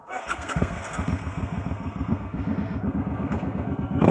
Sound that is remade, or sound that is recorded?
remade